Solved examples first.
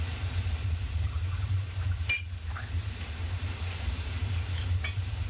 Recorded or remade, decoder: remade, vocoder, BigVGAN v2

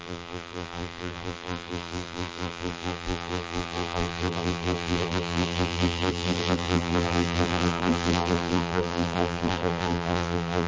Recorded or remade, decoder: remade, vocoder, BigVGAN v2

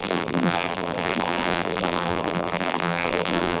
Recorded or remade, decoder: remade, vocoder, BigVGAN v2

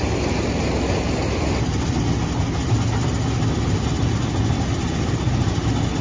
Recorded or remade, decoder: recorded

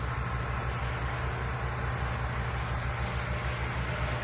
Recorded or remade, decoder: recorded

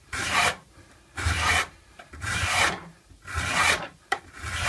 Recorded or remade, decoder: remade, vocoder, BigVGAN v2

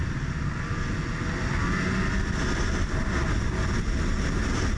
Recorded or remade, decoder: recorded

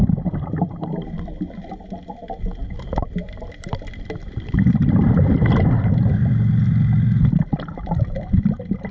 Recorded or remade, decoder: remade, vocoder, BigVGAN v2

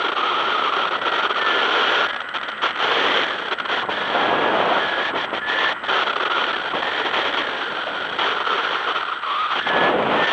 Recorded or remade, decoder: recorded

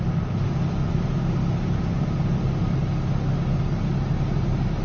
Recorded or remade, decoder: recorded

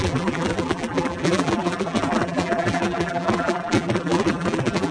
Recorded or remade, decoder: remade, vocoder, BigVGAN v2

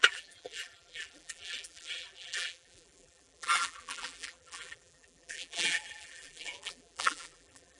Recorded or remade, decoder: remade, vocoder, BigVGAN v2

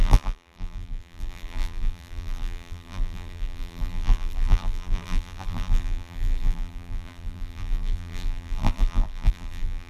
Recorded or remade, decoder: remade, vocoder, BigVGAN v2